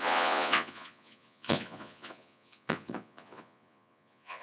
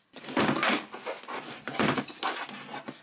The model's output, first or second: first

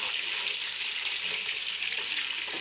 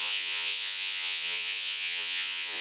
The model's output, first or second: second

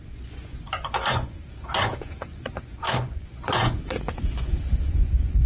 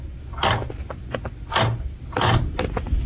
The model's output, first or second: first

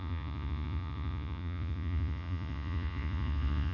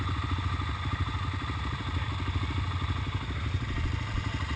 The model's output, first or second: first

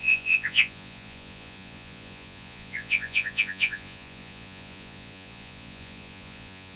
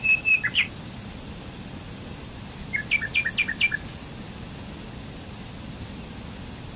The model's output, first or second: first